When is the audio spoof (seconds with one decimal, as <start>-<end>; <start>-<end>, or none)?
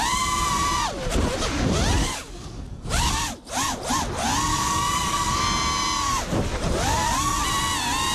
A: 2.0-2.9; 4.5-5.4